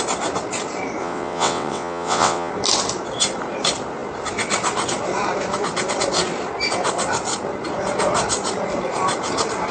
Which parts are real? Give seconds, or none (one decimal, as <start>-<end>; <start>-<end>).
0.0-1.0; 2.5-9.7